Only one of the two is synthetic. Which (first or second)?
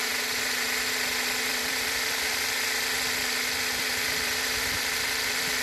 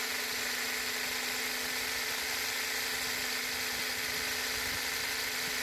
first